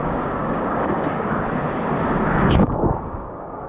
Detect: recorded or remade remade